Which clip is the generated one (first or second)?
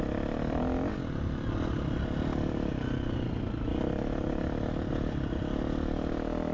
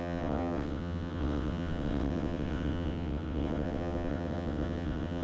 second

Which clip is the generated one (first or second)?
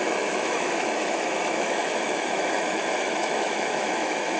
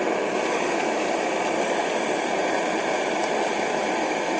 first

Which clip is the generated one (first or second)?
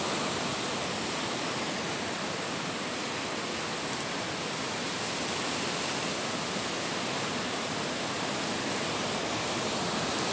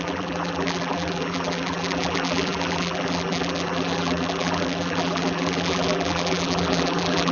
second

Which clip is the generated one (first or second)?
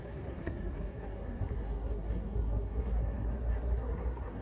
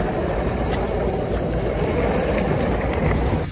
first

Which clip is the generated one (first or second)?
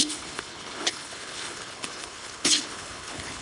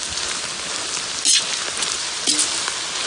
first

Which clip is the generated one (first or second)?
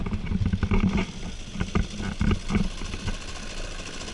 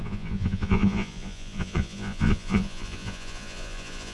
second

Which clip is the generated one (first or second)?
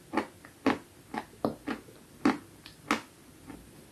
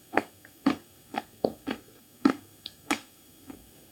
second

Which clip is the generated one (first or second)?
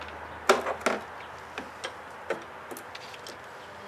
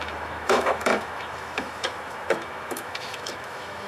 second